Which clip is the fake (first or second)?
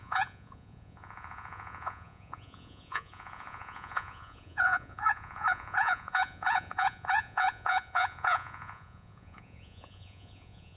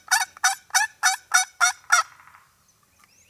first